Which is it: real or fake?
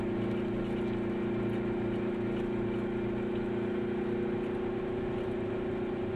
real